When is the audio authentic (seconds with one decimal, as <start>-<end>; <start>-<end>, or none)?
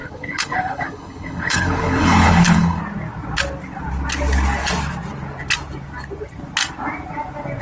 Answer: 2.8-7.6